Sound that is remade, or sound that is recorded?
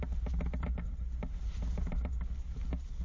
recorded